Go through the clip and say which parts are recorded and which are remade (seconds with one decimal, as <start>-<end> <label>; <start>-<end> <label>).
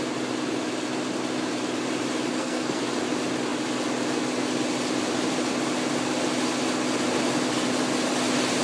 0.0-2.3 recorded; 2.3-2.8 remade; 2.8-8.6 recorded